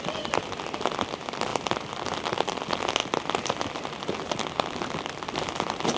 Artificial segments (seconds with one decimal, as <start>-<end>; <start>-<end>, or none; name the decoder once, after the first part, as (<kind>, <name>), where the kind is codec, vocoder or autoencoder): none